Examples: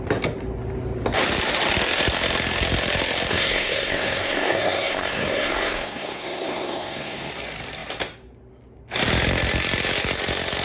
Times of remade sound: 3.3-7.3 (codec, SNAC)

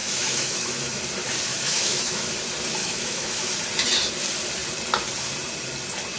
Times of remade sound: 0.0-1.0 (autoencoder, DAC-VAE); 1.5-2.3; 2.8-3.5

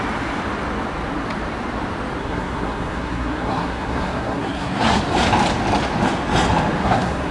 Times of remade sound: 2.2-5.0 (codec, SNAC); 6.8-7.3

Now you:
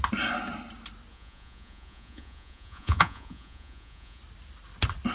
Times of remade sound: 1.1-4.2 (vocoder, Vocos)

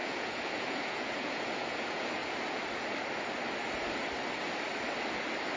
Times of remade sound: 0.0-2.2 (vocoder, Vocos)

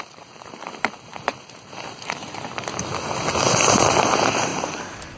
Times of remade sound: none

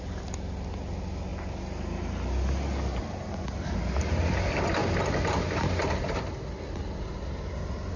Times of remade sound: none